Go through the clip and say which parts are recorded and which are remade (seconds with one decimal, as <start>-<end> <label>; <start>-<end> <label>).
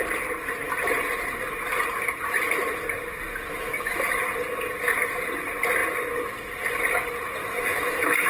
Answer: 0.0-3.5 recorded; 3.5-4.2 remade; 4.2-7.4 recorded; 7.4-8.3 remade